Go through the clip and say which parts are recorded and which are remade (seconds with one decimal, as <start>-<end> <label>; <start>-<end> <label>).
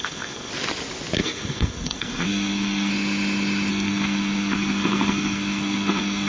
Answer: 0.0-0.5 remade; 0.5-1.2 recorded; 1.2-2.9 remade; 2.9-3.7 recorded; 3.7-6.3 remade